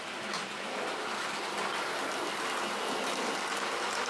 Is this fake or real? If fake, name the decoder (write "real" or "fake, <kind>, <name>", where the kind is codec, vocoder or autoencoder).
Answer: real